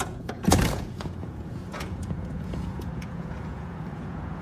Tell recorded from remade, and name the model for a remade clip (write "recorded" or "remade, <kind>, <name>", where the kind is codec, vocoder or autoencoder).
remade, vocoder, Vocos